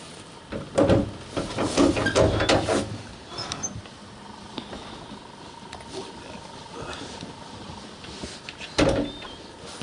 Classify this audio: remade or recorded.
recorded